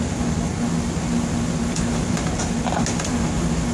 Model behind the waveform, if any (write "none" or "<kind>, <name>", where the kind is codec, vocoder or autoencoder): none